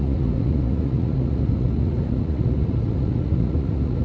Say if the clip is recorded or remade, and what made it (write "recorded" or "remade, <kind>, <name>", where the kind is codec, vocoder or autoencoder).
remade, vocoder, Vocos